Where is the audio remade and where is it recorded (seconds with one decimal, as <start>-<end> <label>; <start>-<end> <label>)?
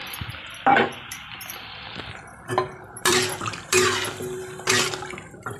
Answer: 0.0-5.6 remade